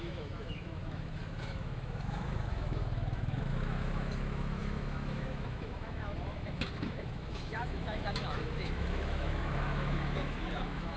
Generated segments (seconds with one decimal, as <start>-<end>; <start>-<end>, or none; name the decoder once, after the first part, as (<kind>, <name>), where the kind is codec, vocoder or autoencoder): 0.0-11.0 (autoencoder, DAC-VAE)